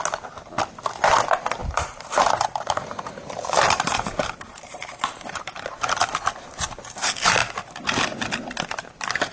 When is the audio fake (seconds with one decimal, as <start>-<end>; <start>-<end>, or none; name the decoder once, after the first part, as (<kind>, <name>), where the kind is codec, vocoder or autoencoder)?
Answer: 1.6-6.3 (vocoder, BigVGAN v2)

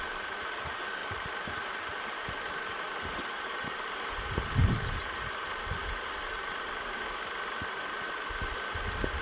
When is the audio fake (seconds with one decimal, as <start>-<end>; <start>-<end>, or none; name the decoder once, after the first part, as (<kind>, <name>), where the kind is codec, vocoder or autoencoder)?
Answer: 1.0-1.7 (vocoder, BigVGAN v2)